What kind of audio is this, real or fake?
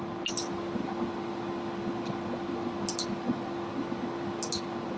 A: real